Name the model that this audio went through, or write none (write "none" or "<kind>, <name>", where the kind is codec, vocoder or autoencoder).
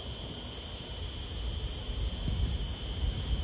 none